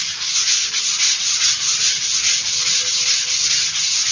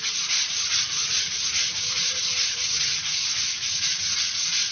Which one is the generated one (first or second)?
second